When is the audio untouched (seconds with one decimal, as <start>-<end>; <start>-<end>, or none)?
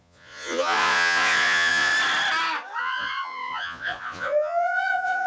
1.9-2.8